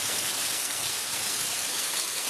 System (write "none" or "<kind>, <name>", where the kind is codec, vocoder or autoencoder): codec, SNAC